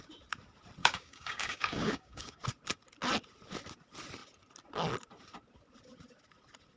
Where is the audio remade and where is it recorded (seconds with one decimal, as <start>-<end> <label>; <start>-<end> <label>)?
0.0-0.8 recorded; 0.8-2.4 remade; 2.4-6.8 recorded